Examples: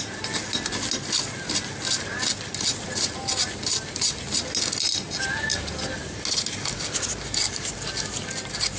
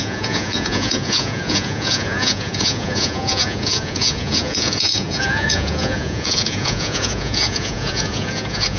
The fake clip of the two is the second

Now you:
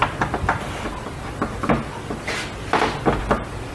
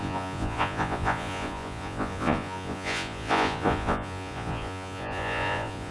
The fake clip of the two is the second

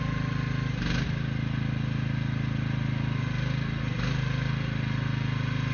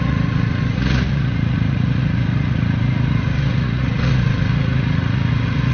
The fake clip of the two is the second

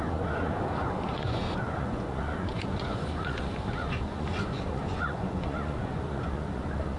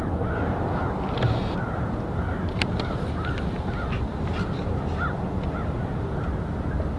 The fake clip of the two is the first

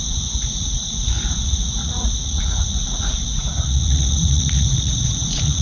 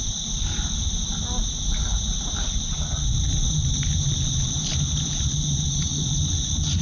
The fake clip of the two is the first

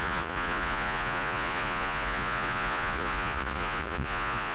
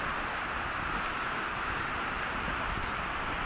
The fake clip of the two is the first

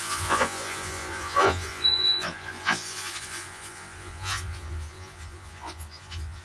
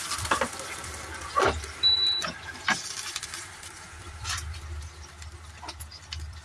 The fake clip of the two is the first